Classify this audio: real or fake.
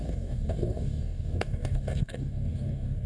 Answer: fake